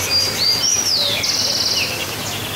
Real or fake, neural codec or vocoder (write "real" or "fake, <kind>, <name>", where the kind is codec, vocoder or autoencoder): real